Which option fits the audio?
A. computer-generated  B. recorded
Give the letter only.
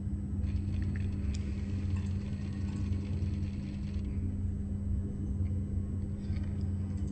B